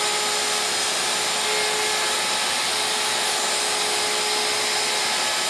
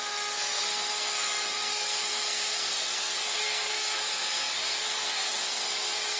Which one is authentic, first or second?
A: first